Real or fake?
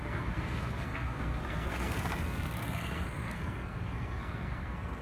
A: fake